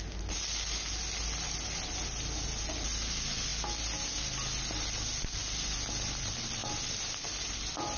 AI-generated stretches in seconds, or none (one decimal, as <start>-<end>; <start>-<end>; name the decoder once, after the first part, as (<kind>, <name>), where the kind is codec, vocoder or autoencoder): none